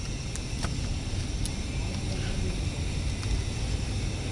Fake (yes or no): no